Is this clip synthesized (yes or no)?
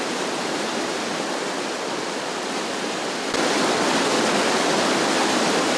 yes